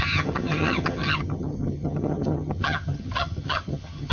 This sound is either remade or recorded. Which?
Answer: remade